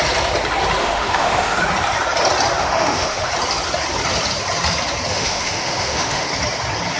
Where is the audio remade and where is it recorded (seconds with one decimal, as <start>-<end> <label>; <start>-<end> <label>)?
0.0-0.8 recorded; 0.8-1.6 remade; 1.6-2.6 recorded; 2.6-3.3 remade; 3.3-5.1 recorded; 5.1-6.3 remade; 6.3-7.0 recorded